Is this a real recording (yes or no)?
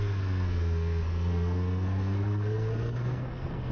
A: no